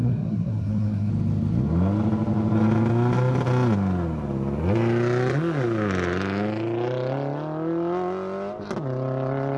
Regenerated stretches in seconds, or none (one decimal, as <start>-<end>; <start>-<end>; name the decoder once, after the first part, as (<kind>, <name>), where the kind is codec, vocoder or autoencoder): 0.0-1.1 (codec, SNAC)